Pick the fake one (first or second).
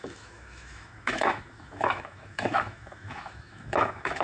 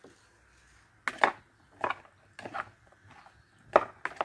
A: first